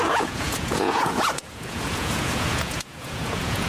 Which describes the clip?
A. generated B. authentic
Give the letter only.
A